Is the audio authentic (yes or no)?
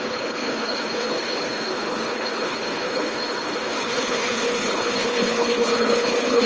no